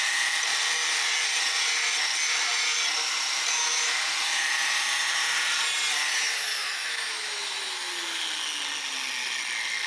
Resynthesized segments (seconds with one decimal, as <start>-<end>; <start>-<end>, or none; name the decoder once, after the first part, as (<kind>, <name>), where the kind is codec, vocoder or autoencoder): 6.6-7.9 (autoencoder, DAC-VAE)